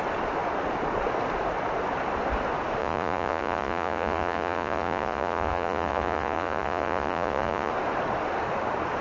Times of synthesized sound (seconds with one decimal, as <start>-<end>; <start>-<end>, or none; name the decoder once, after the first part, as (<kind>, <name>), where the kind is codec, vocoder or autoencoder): 2.8-7.7 (vocoder, Vocos)